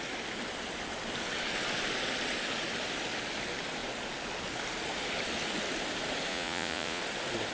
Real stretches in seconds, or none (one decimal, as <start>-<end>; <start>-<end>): 0.0-6.3; 7.0-7.5